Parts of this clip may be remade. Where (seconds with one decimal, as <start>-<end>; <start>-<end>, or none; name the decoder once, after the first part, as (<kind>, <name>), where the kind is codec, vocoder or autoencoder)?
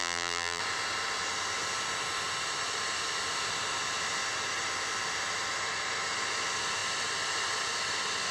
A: 0.0-0.6 (vocoder, BigVGAN v2)